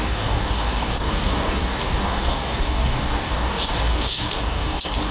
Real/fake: fake